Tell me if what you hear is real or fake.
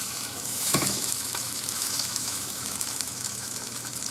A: fake